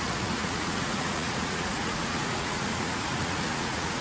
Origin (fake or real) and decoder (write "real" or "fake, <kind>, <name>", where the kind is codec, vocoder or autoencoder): fake, vocoder, Vocos